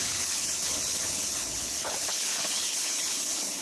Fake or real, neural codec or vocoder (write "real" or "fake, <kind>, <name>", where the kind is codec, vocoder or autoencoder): fake, codec, HILCodec